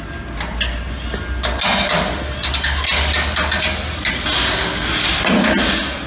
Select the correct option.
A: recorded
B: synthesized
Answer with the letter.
A